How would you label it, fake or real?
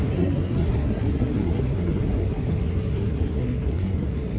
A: fake